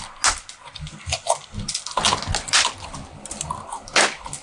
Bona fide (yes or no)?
yes